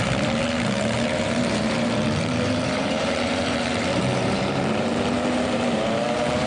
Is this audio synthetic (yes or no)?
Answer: yes